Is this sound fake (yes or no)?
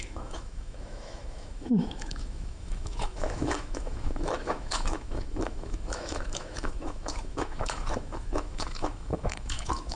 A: yes